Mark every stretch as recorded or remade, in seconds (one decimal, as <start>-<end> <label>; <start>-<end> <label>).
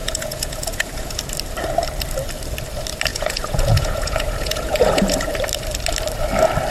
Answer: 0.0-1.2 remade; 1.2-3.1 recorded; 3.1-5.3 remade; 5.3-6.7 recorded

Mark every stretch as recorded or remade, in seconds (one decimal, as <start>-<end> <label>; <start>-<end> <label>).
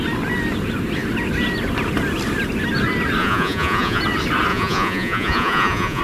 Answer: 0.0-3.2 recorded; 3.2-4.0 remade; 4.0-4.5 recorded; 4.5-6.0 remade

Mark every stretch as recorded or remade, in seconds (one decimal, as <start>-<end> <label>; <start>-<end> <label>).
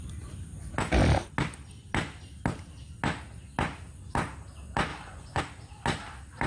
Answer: 0.0-4.9 recorded; 4.9-5.4 remade; 5.4-6.5 recorded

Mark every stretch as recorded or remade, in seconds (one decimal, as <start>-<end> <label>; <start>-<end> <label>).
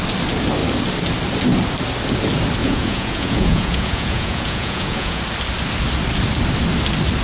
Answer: 0.0-2.6 recorded; 2.6-5.2 remade; 5.2-7.2 recorded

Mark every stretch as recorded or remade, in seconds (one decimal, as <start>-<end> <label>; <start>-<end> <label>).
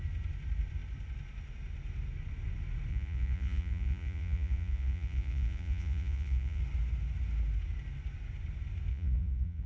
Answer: 0.0-2.9 recorded; 2.9-6.6 remade; 6.6-8.9 recorded; 8.9-9.7 remade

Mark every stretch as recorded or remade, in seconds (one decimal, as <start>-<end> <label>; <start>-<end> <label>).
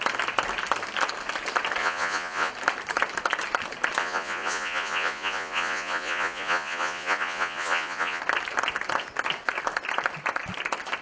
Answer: 0.0-1.8 recorded; 1.8-2.5 remade; 2.5-4.0 recorded; 4.0-8.2 remade; 8.2-11.0 recorded